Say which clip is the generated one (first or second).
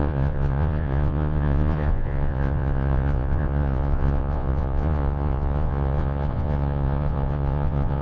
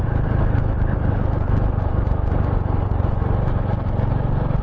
first